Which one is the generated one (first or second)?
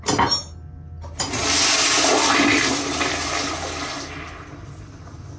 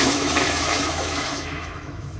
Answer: second